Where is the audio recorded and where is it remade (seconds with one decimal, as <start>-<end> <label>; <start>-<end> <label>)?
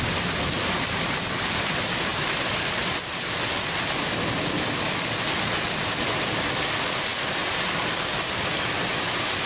0.0-9.5 recorded